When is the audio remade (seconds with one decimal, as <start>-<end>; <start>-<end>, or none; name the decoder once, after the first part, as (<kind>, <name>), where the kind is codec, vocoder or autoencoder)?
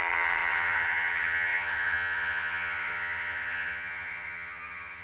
0.0-5.0 (vocoder, HiFi-GAN)